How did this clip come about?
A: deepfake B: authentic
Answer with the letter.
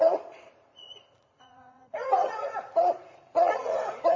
A